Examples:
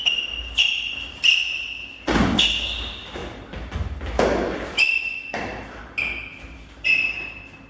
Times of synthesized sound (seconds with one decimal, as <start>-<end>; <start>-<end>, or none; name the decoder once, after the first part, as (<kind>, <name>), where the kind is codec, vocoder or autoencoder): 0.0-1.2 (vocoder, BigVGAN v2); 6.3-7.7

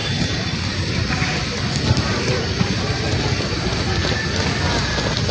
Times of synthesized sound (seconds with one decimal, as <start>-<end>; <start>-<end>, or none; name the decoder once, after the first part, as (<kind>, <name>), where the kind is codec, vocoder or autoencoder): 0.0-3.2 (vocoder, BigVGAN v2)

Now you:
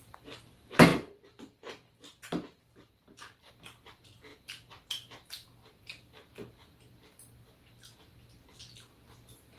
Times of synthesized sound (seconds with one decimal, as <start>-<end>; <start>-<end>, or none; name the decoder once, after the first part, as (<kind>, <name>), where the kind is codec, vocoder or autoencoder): 0.9-3.5 (vocoder, BigVGAN v2)